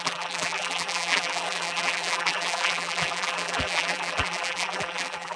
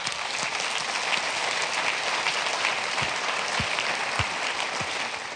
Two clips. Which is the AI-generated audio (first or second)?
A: first